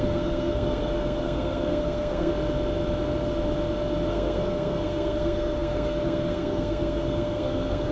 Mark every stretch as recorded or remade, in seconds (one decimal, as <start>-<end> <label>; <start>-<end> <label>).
0.0-2.3 remade; 2.3-4.1 recorded; 4.1-7.9 remade

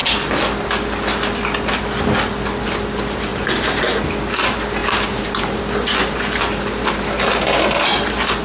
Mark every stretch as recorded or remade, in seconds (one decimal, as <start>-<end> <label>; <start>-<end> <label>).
0.0-3.3 recorded; 3.3-3.8 remade; 3.8-4.8 recorded; 4.8-5.6 remade; 5.6-8.4 recorded

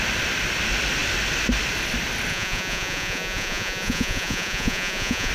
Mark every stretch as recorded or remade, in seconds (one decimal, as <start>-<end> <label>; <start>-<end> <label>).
0.0-2.3 recorded; 2.3-5.3 remade

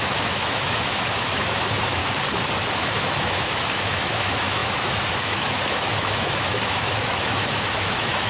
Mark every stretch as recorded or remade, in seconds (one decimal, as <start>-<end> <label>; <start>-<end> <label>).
0.0-2.0 remade; 2.0-2.8 recorded; 2.8-8.3 remade